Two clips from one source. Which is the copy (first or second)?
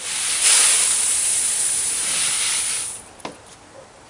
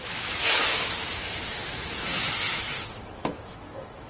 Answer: second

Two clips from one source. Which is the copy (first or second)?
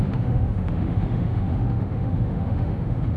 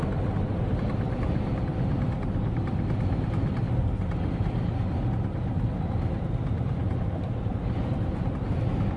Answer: first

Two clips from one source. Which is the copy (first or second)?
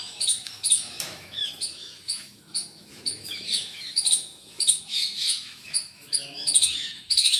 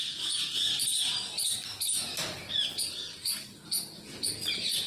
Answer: first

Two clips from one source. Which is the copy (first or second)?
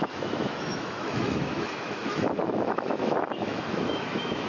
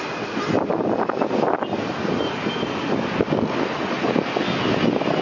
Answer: first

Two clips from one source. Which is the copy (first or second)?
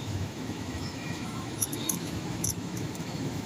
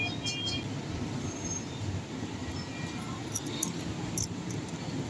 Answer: first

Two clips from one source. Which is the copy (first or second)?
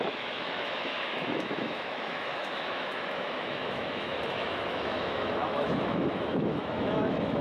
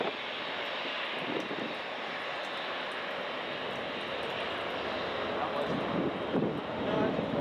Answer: first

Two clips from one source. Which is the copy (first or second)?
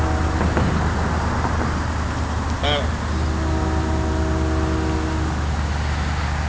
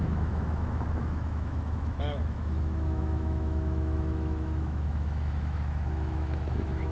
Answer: second